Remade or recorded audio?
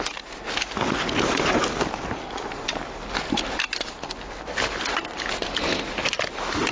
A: recorded